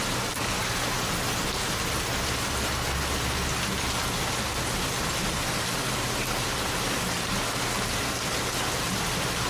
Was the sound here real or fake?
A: real